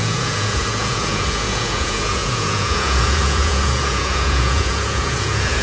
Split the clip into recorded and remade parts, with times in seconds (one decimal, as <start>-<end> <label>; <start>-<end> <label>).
0.0-5.6 remade